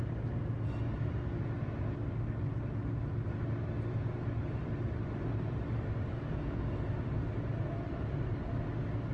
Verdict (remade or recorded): recorded